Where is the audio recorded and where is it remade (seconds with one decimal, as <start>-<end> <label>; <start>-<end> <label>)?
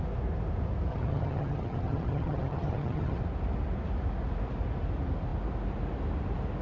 0.0-0.9 recorded; 0.9-3.2 remade; 3.2-6.6 recorded